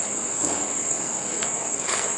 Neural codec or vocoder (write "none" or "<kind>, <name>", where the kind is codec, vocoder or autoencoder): codec, SNAC